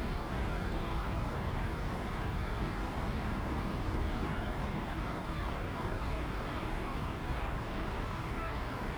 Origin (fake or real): fake